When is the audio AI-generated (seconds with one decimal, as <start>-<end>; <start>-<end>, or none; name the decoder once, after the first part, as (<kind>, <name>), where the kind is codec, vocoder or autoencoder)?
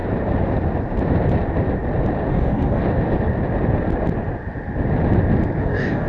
2.3-2.8 (codec, DAC); 5.6-6.1